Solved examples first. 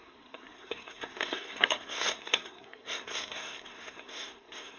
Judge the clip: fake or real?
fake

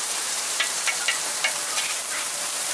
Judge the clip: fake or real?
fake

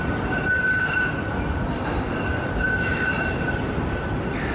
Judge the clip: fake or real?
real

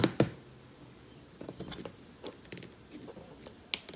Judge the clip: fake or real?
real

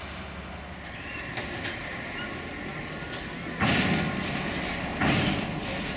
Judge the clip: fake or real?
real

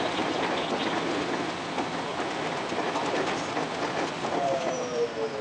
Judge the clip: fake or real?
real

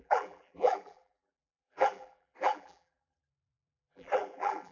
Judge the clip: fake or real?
fake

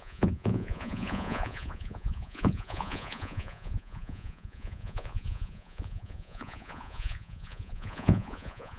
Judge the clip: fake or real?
fake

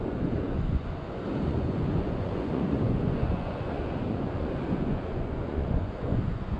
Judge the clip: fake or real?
fake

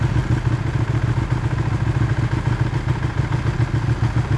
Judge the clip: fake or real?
real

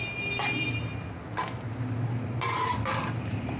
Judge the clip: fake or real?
real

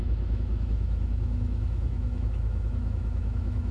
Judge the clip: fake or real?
fake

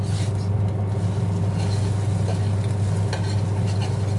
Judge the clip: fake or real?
real